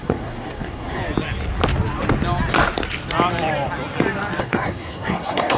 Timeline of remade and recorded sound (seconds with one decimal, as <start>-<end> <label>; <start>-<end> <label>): 0.0-1.0 remade; 1.0-4.4 recorded; 4.4-5.6 remade